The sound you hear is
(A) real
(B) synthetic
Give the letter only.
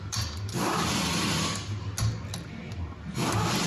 A